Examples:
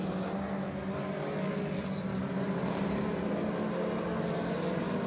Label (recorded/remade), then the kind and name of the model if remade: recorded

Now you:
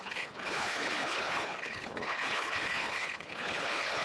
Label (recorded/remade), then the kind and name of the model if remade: remade, codec, HILCodec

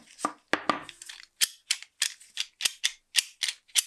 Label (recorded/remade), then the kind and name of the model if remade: recorded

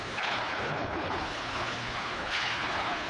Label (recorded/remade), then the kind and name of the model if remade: remade, codec, HILCodec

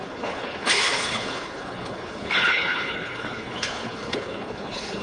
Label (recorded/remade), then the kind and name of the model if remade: remade, codec, HILCodec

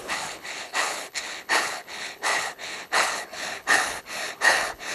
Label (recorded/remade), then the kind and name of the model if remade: remade, codec, HILCodec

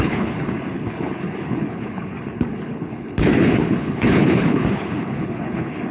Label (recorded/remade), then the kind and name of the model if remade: remade, codec, HILCodec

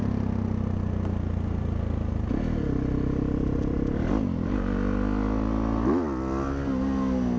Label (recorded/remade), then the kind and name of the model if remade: recorded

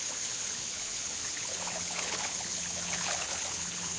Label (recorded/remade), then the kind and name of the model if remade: remade, codec, HILCodec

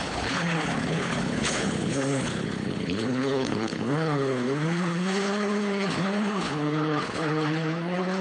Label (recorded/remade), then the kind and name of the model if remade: remade, codec, HILCodec